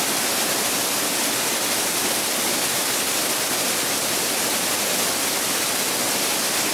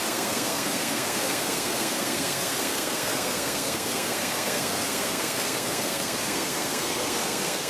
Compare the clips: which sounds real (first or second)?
first